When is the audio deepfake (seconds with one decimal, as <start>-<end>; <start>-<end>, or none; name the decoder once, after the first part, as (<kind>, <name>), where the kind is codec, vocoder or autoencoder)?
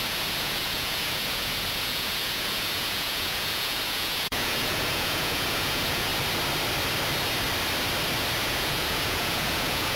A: 0.0-6.1 (vocoder, Vocos); 8.4-10.0